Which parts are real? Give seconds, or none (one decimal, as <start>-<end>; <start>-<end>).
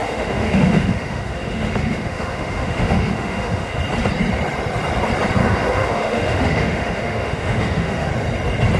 3.8-5.4; 8.1-8.8